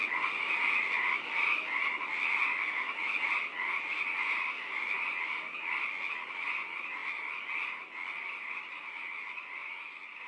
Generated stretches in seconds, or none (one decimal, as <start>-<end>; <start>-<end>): 2.6-3.3